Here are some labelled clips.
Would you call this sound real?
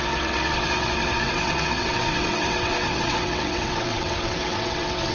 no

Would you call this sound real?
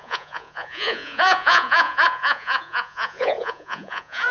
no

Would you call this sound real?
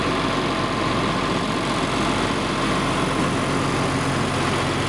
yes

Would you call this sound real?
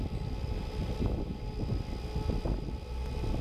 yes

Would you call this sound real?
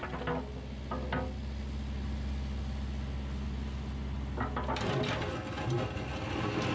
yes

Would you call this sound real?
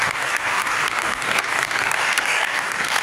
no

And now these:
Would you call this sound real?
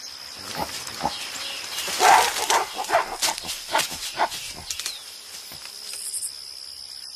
yes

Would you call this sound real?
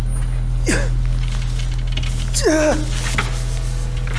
yes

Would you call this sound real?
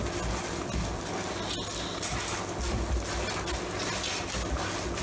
yes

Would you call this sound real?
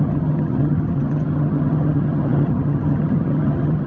no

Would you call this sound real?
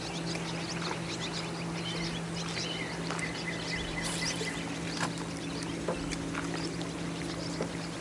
yes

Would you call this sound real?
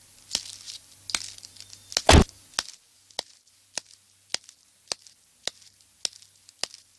yes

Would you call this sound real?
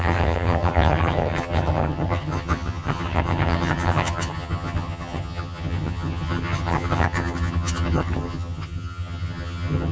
no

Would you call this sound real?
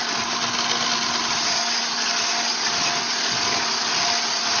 yes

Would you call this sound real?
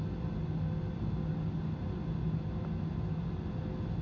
yes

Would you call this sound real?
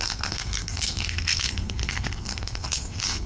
no